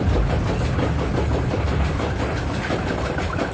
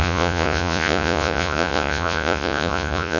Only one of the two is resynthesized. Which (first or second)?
second